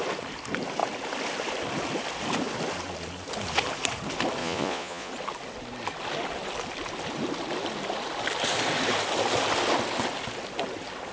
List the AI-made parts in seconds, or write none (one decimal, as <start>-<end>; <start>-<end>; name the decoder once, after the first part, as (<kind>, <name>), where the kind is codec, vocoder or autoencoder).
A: 4.4-5.1 (vocoder, Vocos)